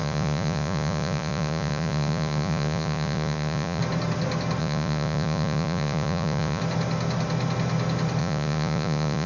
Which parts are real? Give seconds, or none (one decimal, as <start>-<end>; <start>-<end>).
3.8-4.6; 6.6-8.2